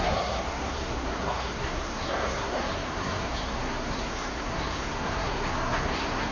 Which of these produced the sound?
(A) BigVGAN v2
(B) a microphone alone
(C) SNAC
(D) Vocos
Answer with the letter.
C